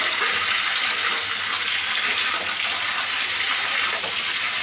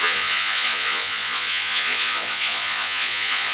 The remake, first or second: second